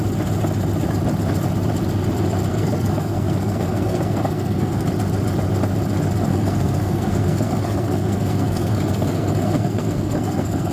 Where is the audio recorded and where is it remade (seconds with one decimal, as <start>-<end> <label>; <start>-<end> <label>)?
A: 0.0-2.5 recorded; 2.5-4.9 remade; 4.9-6.3 recorded; 6.3-10.7 remade